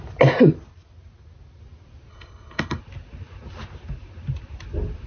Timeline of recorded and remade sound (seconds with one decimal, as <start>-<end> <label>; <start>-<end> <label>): 0.0-2.1 recorded; 2.1-2.8 remade; 2.8-5.1 recorded